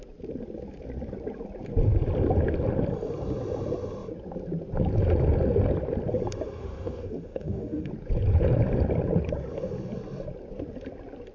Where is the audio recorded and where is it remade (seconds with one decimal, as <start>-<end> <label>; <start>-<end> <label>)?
0.0-6.6 recorded; 6.6-7.9 remade; 7.9-11.3 recorded

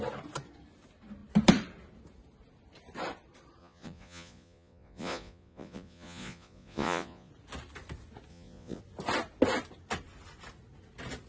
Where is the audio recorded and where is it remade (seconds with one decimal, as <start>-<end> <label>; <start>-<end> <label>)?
0.0-3.6 recorded; 3.6-7.3 remade; 7.3-8.3 recorded; 8.3-8.8 remade; 8.8-11.3 recorded

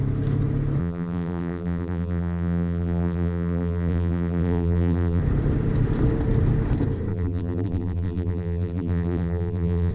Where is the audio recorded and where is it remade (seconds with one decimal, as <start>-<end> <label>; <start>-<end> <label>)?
0.0-0.8 recorded; 0.8-5.2 remade; 5.2-7.1 recorded; 7.1-9.9 remade